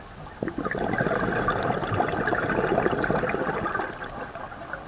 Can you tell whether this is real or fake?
real